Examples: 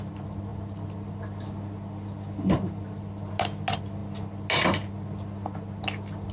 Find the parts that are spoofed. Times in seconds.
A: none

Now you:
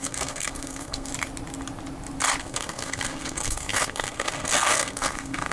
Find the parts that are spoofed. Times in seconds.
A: 0.0-1.1 (codec, SNAC); 2.4-5.5

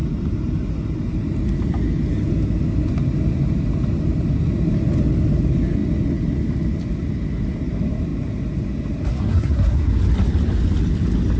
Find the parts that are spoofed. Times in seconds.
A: 9.1-9.9 (codec, SNAC)

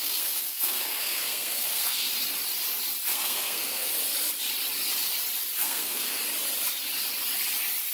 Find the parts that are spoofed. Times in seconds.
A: 0.0-2.1 (codec, SNAC); 3.1-3.9; 5.6-6.2

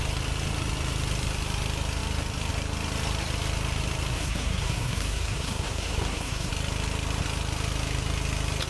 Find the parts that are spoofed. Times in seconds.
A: 4.1-6.5 (codec, SNAC)